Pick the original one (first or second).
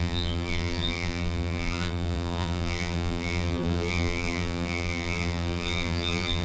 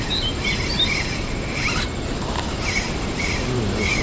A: second